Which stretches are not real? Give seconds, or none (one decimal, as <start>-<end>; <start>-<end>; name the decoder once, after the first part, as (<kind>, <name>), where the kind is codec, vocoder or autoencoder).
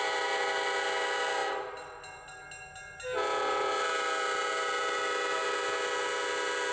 none